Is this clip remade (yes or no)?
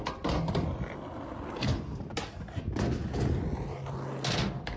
no